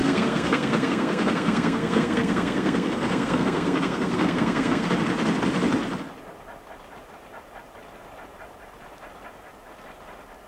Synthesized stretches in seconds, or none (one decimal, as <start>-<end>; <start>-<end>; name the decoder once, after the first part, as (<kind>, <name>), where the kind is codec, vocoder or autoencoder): 0.0-4.9 (codec, SNAC)